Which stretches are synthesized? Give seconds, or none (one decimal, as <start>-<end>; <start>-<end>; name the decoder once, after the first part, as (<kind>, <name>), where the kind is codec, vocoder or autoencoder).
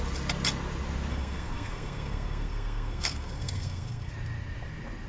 1.1-4.1 (codec, SNAC)